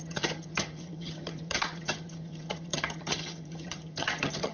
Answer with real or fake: fake